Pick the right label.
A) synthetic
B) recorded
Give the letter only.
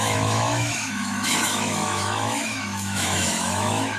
A